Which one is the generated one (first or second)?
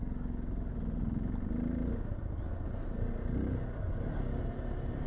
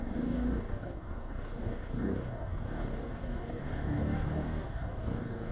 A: second